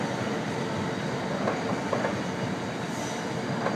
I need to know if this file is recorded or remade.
recorded